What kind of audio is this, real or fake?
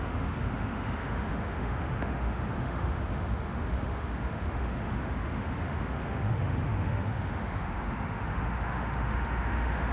fake